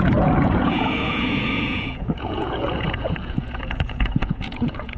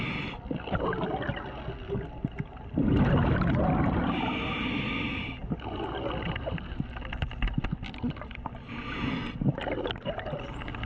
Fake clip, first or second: first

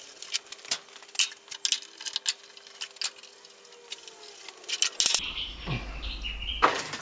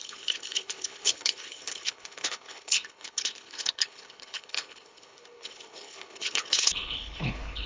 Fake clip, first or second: second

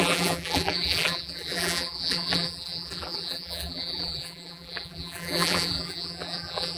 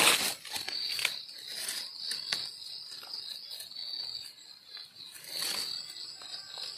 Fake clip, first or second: first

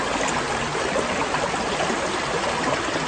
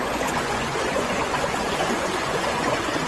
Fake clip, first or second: second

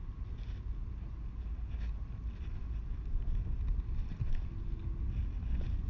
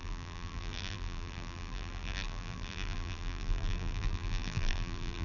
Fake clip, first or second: second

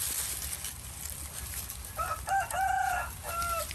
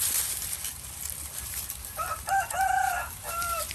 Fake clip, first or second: second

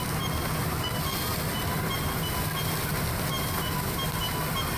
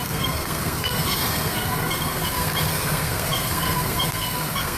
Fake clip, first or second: second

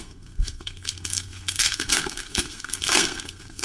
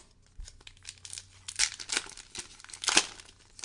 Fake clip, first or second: first